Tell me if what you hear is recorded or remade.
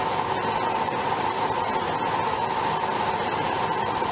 recorded